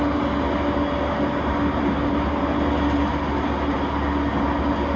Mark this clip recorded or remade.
recorded